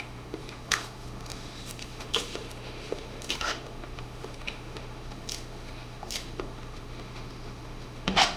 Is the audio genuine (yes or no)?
no